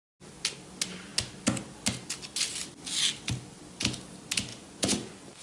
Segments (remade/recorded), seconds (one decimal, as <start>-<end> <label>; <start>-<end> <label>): 0.0-4.5 recorded; 4.5-5.4 remade

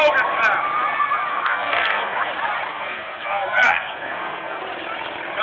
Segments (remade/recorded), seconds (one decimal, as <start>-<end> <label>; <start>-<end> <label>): 0.0-1.3 recorded; 1.3-2.3 remade; 2.3-2.7 recorded; 2.7-4.6 remade; 4.6-5.4 recorded

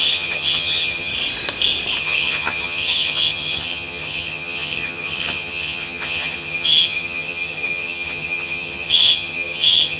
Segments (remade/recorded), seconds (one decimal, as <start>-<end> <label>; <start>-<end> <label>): 0.0-1.1 remade; 1.1-2.0 recorded; 2.0-10.0 remade

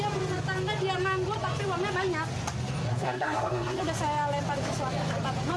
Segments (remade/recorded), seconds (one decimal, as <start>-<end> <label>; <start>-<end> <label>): 0.0-2.9 recorded; 2.9-3.8 remade; 3.8-5.6 recorded

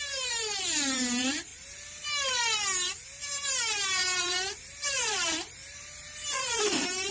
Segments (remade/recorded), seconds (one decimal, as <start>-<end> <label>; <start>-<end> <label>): 0.0-1.5 remade; 1.5-4.2 recorded; 4.2-7.1 remade